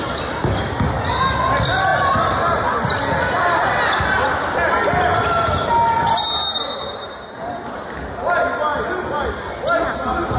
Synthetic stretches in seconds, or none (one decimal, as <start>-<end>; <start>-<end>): none